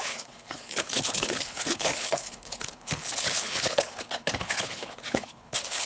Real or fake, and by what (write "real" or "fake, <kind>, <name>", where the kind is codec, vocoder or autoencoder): fake, codec, HILCodec